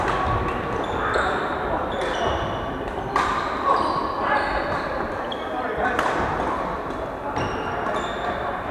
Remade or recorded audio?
recorded